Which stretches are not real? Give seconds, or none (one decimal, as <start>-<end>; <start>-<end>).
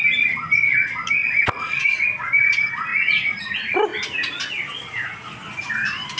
none